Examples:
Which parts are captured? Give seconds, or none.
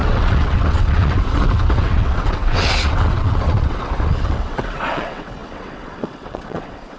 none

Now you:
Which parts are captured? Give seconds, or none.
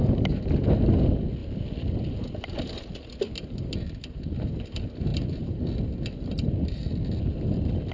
0.0-5.1; 5.6-7.9